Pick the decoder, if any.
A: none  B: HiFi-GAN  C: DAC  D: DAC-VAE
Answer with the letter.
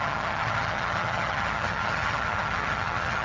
B